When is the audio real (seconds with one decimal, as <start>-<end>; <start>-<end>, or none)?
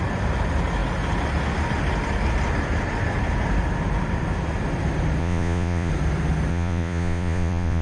0.0-5.2; 5.9-6.5